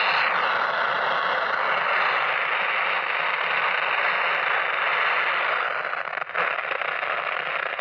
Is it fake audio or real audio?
real